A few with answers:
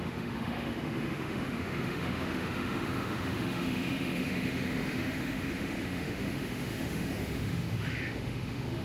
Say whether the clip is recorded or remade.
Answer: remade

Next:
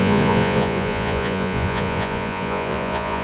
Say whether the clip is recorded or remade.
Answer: remade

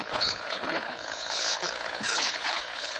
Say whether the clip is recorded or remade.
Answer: remade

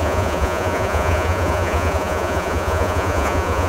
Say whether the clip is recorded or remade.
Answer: remade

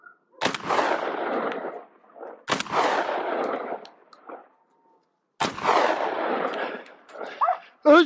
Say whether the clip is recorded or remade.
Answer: recorded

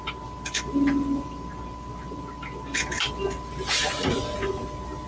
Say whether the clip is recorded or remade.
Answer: recorded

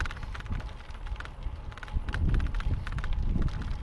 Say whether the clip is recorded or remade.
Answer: recorded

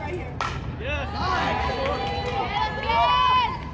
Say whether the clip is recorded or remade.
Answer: recorded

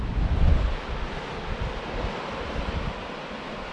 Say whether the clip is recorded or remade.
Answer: recorded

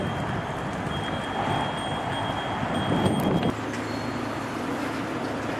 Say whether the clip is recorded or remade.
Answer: recorded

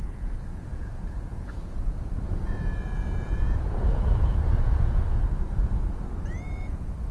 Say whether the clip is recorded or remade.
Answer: remade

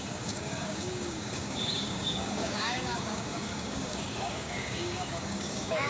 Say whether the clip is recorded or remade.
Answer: remade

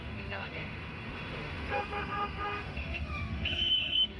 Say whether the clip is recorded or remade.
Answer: remade